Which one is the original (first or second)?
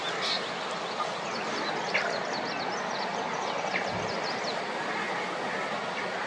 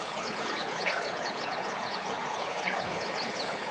first